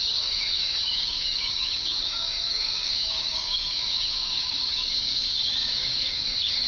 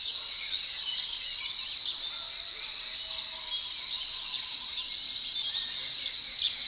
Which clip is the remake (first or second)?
first